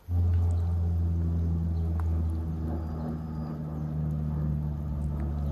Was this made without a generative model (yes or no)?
yes